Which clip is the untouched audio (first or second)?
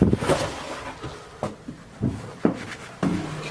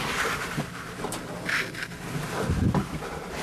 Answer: first